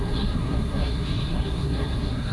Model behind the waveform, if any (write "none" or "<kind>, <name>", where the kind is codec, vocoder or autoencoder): codec, SNAC